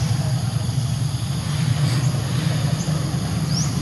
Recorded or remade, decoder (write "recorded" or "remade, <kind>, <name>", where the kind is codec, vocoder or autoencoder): remade, vocoder, BigVGAN v2